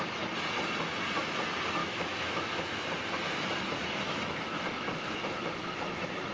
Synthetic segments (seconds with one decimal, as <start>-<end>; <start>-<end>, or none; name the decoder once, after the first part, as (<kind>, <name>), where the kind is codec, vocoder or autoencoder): 1.8-2.8 (autoencoder, DAC-VAE); 3.8-6.3